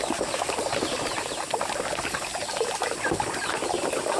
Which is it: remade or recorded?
recorded